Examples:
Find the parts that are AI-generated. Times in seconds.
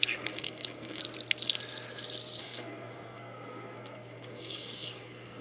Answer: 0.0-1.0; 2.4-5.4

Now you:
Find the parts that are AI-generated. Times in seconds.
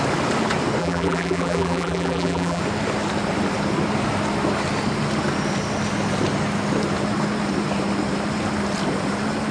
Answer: 0.8-2.6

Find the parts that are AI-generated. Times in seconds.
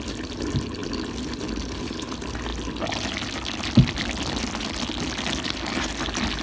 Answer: none